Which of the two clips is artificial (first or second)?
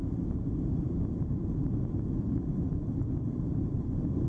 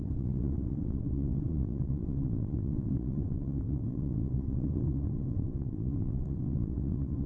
second